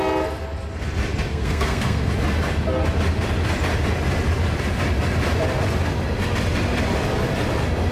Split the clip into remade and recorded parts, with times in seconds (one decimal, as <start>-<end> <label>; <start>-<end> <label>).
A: 0.0-1.3 recorded; 1.3-2.1 remade; 2.1-7.9 recorded